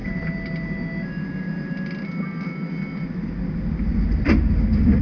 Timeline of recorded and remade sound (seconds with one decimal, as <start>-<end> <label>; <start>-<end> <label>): 0.0-5.0 recorded